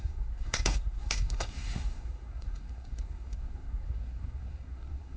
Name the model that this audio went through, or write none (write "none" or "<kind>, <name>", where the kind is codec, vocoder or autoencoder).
codec, SNAC